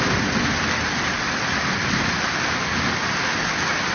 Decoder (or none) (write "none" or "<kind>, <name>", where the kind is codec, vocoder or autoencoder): none